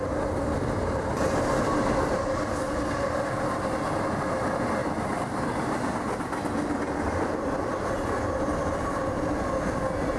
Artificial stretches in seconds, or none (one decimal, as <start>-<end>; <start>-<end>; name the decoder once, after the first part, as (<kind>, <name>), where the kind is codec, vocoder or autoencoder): none